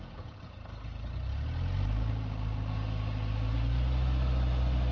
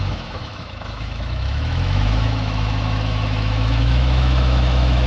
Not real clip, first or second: second